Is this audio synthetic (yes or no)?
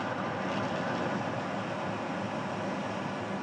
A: no